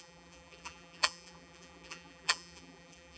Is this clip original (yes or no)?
no